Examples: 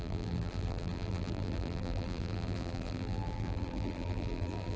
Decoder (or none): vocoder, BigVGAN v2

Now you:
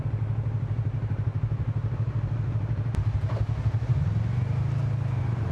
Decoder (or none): none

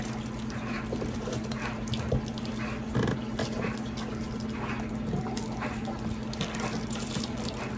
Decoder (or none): none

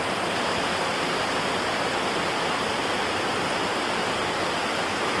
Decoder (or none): none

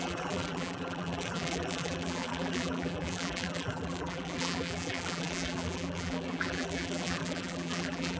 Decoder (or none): vocoder, BigVGAN v2